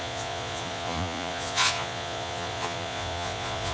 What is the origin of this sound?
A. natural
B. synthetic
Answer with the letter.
B